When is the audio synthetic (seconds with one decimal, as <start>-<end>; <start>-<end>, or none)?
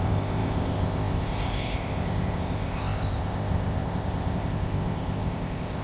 0.0-5.8